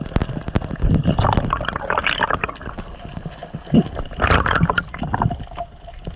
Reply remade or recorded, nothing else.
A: recorded